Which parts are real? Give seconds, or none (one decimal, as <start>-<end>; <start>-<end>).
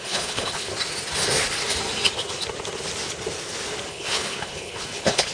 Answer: 0.7-3.9